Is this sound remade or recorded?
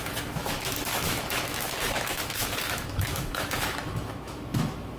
remade